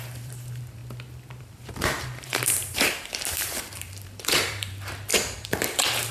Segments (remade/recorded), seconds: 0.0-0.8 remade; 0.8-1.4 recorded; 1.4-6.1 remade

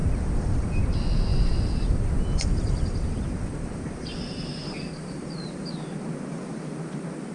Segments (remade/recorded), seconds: 0.0-0.8 remade; 0.8-1.3 recorded; 1.3-5.7 remade; 5.7-7.3 recorded